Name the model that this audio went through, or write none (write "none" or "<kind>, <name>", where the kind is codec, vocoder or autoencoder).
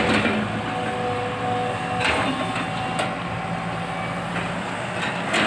none